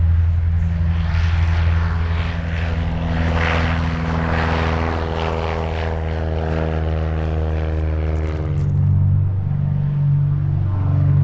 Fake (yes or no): no